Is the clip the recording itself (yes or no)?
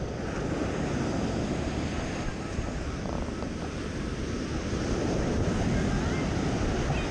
yes